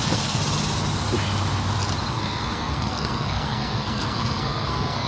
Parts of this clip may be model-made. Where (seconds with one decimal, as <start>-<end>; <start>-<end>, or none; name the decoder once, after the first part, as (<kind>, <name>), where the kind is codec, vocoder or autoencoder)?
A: 0.0-0.4 (codec, SNAC); 2.1-5.1